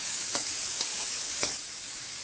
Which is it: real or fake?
fake